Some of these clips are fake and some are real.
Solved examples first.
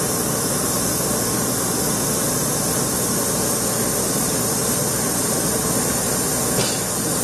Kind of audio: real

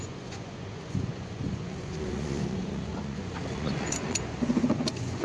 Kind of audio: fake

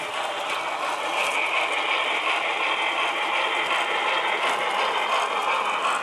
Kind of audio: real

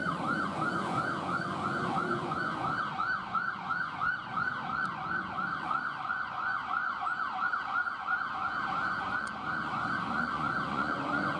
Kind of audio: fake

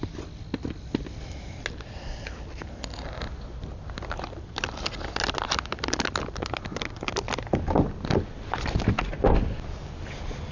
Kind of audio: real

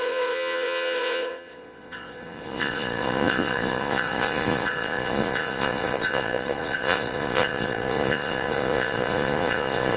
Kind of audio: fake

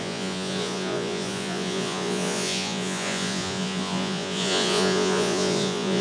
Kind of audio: fake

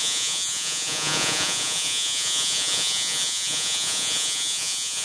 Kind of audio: fake